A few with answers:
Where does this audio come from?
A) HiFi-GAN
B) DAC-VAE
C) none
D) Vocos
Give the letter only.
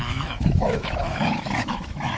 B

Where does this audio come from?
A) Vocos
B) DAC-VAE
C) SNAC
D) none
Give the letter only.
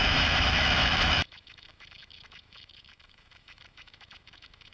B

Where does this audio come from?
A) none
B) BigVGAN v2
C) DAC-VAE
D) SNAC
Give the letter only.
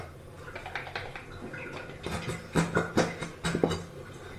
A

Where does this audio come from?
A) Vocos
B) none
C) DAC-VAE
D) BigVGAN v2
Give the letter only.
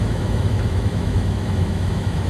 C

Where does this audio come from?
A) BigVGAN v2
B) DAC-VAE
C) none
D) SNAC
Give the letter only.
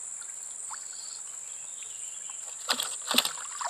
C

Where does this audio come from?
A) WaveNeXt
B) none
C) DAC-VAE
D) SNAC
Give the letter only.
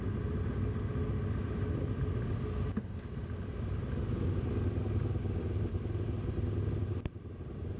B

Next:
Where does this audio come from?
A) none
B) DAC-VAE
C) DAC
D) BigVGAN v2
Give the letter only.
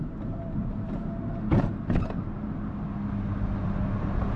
A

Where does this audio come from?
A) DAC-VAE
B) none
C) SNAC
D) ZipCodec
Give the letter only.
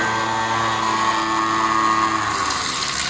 B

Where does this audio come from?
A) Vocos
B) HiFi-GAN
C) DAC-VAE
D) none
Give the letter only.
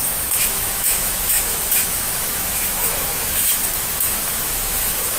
C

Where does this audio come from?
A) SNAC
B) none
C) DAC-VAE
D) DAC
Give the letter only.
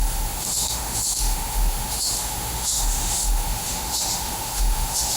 C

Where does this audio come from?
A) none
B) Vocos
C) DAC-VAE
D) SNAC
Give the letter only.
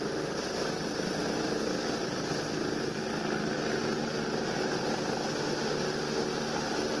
A